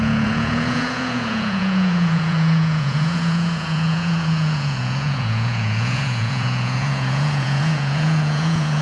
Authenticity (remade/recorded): remade